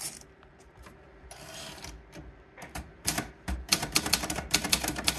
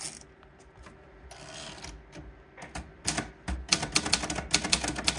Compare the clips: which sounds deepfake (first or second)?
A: first